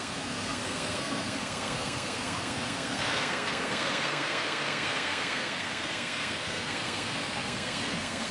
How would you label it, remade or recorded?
remade